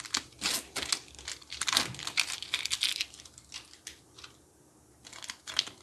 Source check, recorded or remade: recorded